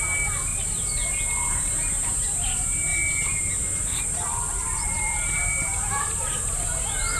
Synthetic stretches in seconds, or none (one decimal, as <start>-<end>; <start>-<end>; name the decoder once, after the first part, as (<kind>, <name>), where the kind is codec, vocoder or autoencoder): none